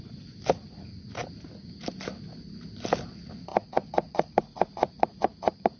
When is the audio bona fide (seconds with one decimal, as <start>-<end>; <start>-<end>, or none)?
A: 0.0-3.5